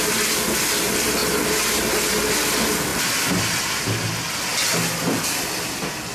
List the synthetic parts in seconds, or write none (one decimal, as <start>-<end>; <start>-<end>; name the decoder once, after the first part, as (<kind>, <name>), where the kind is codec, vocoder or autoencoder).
2.9-3.8 (vocoder, BigVGAN v2); 4.5-6.1